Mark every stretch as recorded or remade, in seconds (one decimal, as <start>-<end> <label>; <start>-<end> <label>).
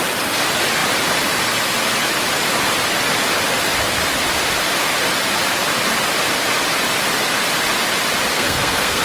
0.0-8.3 recorded; 8.3-9.0 remade